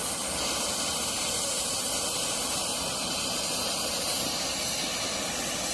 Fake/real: real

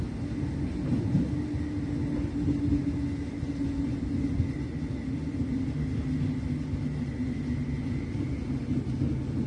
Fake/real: real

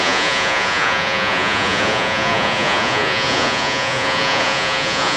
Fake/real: fake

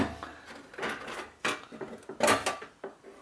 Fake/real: real